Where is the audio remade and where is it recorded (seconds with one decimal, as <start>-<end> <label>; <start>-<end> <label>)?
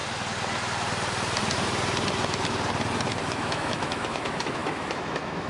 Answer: 0.0-3.2 recorded; 3.2-5.5 remade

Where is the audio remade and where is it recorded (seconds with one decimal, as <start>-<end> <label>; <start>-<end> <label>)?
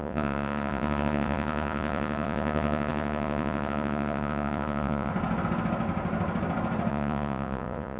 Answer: 0.0-5.1 remade; 5.1-6.9 recorded; 6.9-8.0 remade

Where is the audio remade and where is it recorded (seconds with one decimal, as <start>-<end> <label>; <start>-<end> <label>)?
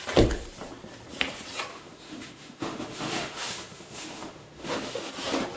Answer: 0.0-1.7 recorded; 1.7-5.1 remade; 5.1-5.6 recorded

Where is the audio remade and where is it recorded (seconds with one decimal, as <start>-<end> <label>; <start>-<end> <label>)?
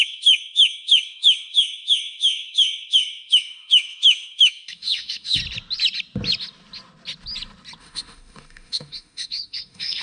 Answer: 0.0-5.4 remade; 5.4-7.8 recorded; 7.8-10.0 remade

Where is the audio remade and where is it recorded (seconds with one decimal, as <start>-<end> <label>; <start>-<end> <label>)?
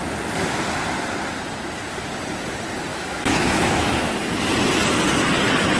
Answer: 0.0-2.9 recorded; 2.9-4.1 remade; 4.1-5.8 recorded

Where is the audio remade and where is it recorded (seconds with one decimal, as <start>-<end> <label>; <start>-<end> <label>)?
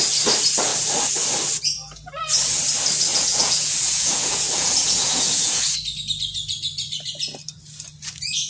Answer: 0.0-3.1 recorded; 3.1-5.6 remade; 5.6-8.5 recorded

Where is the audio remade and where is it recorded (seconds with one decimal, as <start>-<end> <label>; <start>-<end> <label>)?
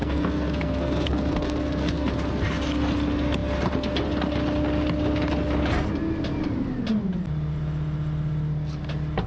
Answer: 0.0-2.1 remade; 2.1-9.3 recorded